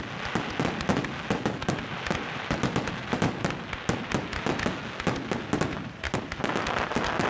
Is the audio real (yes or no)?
yes